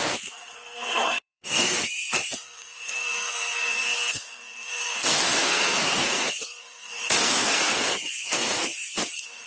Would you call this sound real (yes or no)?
no